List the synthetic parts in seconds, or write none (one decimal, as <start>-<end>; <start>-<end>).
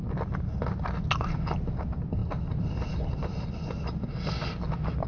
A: 2.2-2.9